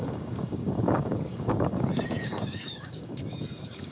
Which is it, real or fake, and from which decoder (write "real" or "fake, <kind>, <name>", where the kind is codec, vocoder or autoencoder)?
fake, codec, DAC